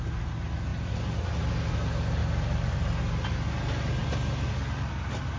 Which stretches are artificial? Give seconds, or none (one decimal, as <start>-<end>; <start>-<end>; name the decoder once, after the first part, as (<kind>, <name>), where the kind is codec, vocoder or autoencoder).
none